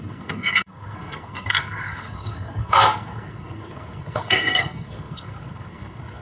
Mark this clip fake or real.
fake